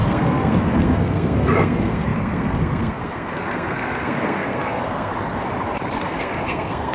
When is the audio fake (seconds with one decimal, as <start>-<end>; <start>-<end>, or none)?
0.0-5.1; 5.9-6.9